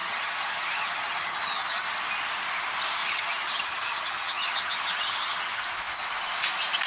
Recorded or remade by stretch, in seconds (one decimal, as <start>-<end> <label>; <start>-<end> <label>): 0.0-1.8 remade; 1.8-3.0 recorded; 3.0-5.6 remade; 5.6-6.9 recorded